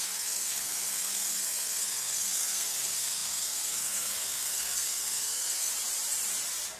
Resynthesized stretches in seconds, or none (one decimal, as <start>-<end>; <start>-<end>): 0.0-5.7